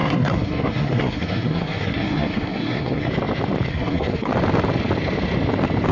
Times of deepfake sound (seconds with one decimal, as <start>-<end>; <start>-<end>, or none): 0.0-3.1; 3.7-4.3